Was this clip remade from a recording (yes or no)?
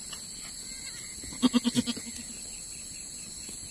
no